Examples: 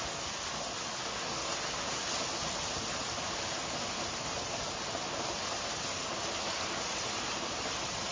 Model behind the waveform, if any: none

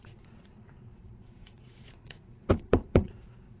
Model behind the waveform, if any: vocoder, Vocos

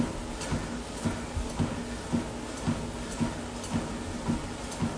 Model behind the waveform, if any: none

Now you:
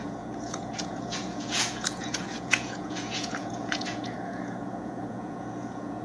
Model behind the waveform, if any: vocoder, Vocos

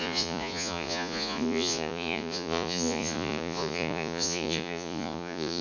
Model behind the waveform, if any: vocoder, Vocos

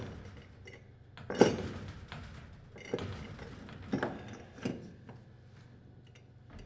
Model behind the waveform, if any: none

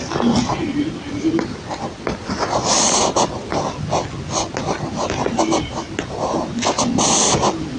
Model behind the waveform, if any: none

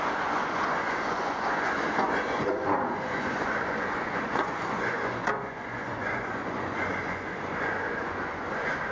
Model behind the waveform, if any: vocoder, Vocos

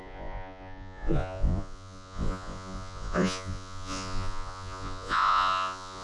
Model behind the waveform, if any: vocoder, Vocos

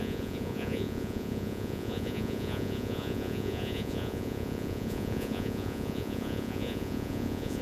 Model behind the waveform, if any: vocoder, Vocos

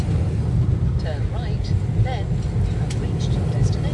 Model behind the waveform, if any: none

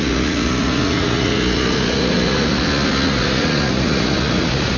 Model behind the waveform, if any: vocoder, Vocos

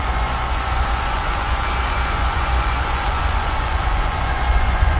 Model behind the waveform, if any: vocoder, Vocos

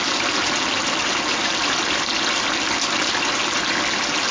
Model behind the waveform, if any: none